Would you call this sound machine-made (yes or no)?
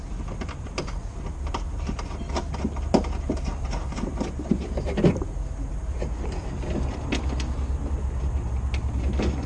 no